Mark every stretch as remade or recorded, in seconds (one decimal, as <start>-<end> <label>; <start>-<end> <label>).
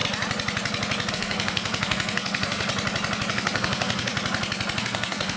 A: 0.0-1.1 recorded; 1.1-2.7 remade; 2.7-3.3 recorded; 3.3-4.1 remade; 4.1-4.8 recorded; 4.8-5.4 remade